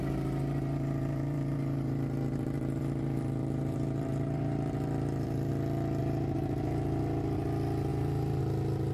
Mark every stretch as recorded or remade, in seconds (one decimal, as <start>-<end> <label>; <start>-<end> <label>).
0.0-0.4 recorded; 0.4-5.5 remade; 5.5-6.0 recorded; 6.0-7.0 remade; 7.0-7.9 recorded; 7.9-8.4 remade; 8.4-8.9 recorded